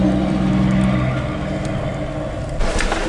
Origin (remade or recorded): recorded